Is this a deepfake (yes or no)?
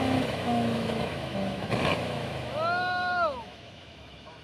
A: yes